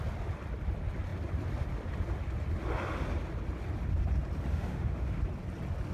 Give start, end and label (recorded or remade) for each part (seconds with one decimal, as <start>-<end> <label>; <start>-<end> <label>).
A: 0.0-4.5 recorded; 4.5-5.2 remade; 5.2-5.9 recorded